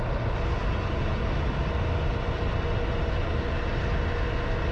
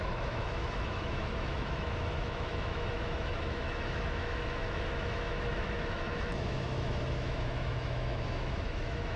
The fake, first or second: second